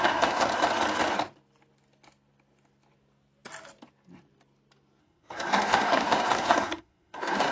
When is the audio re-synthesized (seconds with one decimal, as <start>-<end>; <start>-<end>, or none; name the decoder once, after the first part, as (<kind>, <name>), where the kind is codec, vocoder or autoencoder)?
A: 0.0-0.5 (codec, SNAC); 5.0-7.5